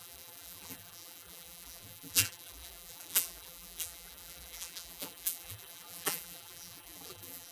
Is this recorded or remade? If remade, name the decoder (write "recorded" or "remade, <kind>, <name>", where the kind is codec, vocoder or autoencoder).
remade, vocoder, BigVGAN v2